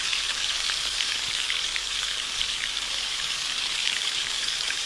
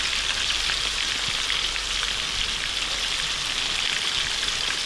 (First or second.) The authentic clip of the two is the second